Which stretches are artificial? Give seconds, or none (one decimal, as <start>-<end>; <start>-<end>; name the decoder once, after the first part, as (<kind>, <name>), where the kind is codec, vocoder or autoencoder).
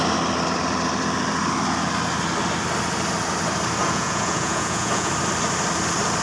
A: 3.8-5.1 (vocoder, Vocos)